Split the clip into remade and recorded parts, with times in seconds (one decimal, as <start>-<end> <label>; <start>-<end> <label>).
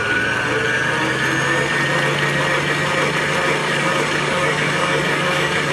0.0-3.6 recorded; 3.6-5.7 remade